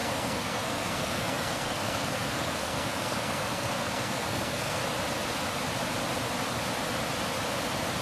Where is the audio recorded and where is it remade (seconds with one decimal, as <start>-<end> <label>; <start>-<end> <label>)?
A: 0.0-4.8 remade; 4.8-8.0 recorded